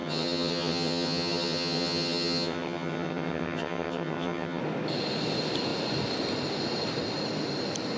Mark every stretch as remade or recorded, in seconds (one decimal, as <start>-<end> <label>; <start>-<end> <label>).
0.0-4.6 remade; 4.6-8.0 recorded